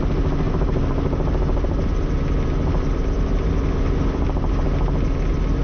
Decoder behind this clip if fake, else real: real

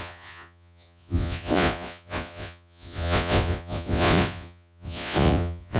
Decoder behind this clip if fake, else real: fake, vocoder, Vocos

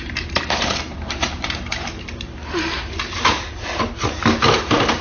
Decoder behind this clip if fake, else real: fake, vocoder, BigVGAN v2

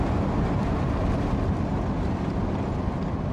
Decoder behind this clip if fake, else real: real